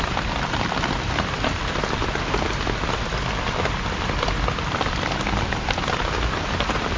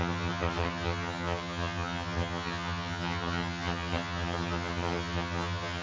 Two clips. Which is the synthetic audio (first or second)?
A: second